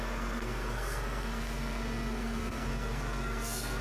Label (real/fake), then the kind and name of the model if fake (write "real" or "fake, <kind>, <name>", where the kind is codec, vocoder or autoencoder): fake, codec, SNAC